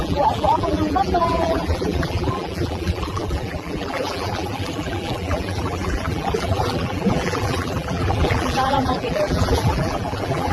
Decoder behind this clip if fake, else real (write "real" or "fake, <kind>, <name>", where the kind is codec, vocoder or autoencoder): fake, vocoder, BigVGAN v2